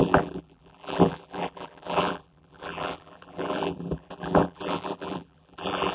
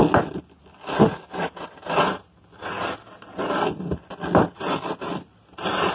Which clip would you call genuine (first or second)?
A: second